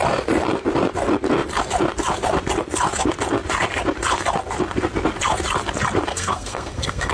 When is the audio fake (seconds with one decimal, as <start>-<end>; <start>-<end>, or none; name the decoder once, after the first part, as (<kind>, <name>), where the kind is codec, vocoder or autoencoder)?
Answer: 6.1-7.1 (codec, SNAC)